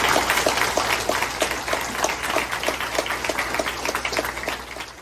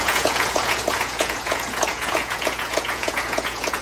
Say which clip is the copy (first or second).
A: second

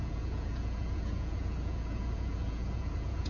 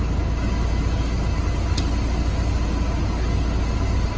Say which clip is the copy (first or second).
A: first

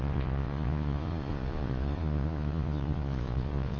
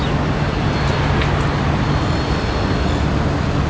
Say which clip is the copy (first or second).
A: first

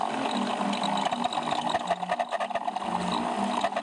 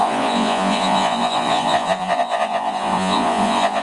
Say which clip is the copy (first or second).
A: second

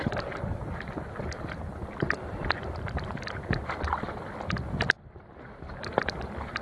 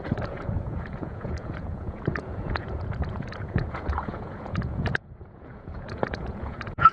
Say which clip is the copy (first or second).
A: second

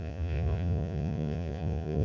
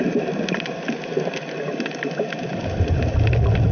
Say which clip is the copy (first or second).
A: first